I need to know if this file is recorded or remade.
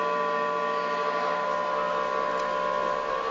recorded